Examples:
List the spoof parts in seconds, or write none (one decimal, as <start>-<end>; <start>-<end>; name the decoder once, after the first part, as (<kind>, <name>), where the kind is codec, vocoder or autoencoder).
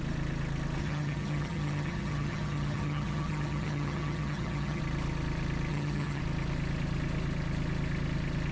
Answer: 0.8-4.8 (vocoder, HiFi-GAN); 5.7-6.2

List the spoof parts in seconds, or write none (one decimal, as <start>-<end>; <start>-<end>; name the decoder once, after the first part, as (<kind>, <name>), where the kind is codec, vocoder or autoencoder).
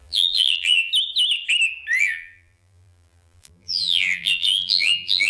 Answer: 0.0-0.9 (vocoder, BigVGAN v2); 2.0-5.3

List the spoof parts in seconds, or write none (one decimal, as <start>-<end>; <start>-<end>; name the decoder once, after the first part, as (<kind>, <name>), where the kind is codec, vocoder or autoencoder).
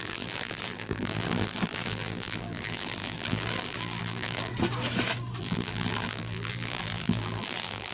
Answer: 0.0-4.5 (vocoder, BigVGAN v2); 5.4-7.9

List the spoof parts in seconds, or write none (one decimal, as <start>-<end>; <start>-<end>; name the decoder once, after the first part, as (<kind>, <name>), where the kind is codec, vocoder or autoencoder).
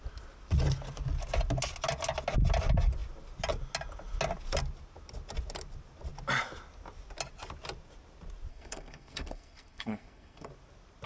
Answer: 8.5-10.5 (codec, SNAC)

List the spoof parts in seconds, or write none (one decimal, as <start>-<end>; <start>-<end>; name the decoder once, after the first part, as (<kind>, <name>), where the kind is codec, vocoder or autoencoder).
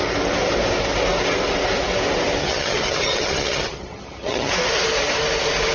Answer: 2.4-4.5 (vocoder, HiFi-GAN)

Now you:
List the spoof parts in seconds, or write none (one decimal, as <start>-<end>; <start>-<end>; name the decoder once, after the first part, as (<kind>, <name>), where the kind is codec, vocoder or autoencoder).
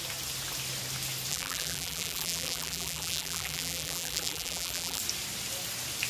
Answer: 1.3-5.0 (vocoder, BigVGAN v2)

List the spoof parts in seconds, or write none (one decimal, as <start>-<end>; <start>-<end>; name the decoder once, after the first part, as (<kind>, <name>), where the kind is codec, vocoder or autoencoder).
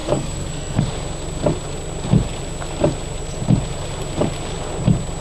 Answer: 0.0-0.8 (codec, SNAC)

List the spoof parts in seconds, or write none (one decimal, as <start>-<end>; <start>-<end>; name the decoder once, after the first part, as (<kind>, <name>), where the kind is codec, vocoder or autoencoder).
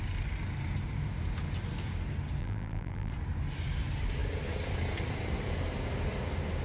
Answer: 2.4-3.1 (vocoder, BigVGAN v2)